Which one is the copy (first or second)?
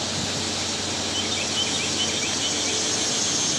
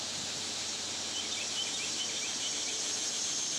second